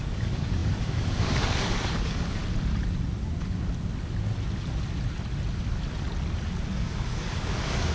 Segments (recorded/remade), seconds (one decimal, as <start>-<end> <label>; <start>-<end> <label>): 0.0-2.4 remade; 2.4-6.7 recorded; 6.7-7.9 remade